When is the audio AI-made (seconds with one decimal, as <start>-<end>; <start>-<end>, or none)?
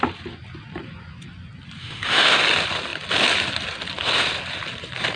1.8-2.4